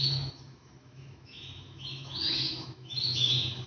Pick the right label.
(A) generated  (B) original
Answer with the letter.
A